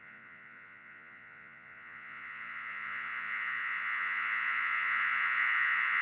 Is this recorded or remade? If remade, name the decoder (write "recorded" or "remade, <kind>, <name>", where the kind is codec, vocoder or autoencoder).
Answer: remade, vocoder, Vocos